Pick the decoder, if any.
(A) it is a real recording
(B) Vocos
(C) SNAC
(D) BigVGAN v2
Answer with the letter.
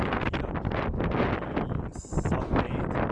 A